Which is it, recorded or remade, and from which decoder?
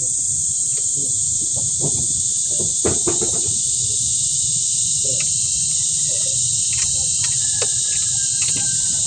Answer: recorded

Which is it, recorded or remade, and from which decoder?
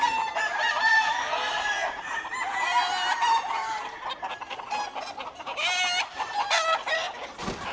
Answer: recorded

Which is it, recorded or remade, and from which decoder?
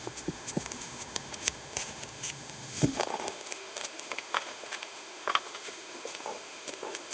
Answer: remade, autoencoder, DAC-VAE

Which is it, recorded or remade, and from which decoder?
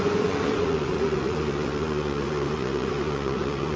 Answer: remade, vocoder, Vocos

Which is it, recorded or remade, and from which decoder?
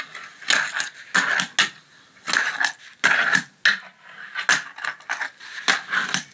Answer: recorded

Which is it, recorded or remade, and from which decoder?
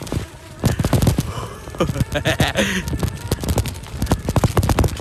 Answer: recorded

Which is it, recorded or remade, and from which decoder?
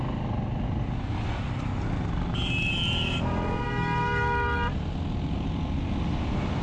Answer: recorded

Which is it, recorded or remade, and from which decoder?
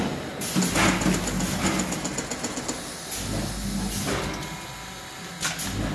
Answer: recorded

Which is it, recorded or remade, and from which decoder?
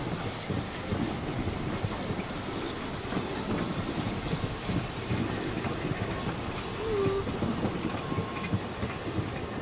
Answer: recorded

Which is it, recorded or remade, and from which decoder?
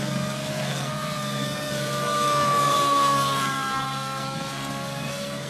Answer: remade, codec, SNAC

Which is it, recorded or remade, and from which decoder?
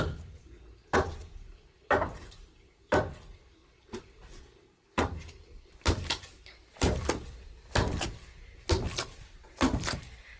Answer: recorded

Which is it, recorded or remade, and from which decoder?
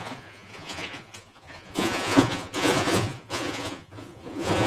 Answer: remade, vocoder, Vocos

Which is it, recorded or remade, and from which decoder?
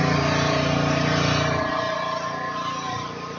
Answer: remade, vocoder, BigVGAN v2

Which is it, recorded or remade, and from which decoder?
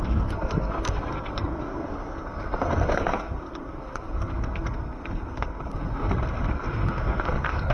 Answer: remade, codec, SNAC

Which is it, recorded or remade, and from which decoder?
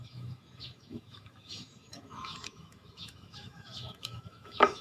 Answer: remade, autoencoder, DAC-VAE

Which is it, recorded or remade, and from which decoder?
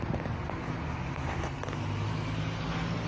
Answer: recorded